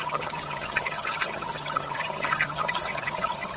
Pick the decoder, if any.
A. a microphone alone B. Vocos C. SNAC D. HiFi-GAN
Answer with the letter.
D